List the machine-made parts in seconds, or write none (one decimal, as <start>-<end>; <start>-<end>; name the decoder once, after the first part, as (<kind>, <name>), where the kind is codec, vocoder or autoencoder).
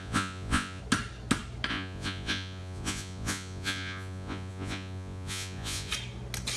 0.0-0.8 (vocoder, Vocos); 1.7-5.9